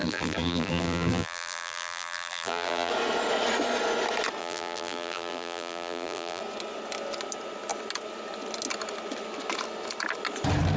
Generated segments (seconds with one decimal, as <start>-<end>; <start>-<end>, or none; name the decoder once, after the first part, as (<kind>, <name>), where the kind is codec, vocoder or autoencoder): 0.0-2.9 (vocoder, BigVGAN v2); 4.4-6.4